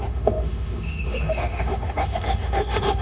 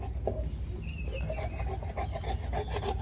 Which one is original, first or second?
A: second